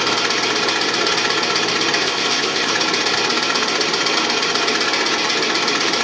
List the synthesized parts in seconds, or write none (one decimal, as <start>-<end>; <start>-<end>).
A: 2.0-2.7